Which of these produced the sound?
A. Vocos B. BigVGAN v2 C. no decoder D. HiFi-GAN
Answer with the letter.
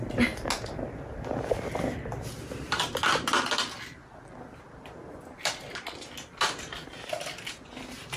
C